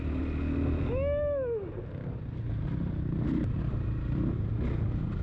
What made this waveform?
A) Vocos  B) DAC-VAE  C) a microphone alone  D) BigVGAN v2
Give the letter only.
C